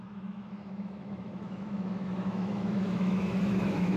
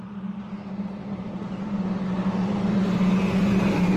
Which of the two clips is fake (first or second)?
first